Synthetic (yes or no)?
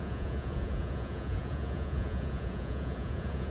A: yes